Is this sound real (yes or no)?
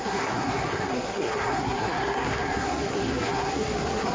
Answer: no